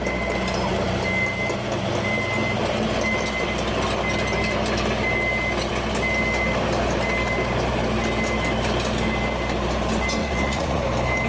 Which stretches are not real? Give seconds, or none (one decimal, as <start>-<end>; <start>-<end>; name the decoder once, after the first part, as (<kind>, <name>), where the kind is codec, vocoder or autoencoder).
10.2-10.8 (vocoder, Vocos)